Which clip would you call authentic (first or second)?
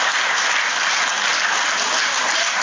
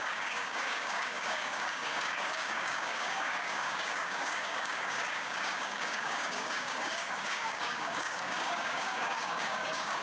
first